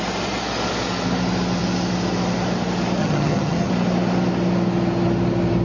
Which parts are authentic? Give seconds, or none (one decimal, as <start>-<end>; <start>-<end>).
0.0-3.0; 3.7-5.6

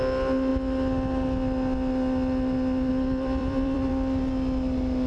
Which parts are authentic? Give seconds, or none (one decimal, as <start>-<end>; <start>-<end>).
0.0-3.4; 3.9-5.1

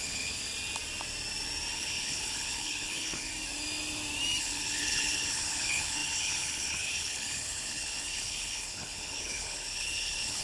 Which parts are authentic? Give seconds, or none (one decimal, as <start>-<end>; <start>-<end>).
0.4-1.7; 3.3-4.4